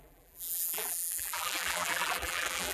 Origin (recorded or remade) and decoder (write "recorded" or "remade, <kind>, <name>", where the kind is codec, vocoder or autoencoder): remade, vocoder, BigVGAN v2